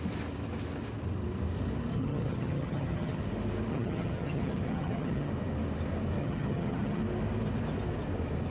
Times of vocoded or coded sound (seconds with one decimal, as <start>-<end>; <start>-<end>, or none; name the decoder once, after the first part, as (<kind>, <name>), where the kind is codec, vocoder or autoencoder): 1.9-3.2 (vocoder, HiFi-GAN); 3.7-5.3; 6.2-7.0